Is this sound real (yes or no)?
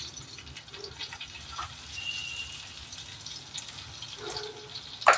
yes